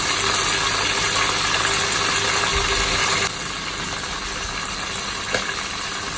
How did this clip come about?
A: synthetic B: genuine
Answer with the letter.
B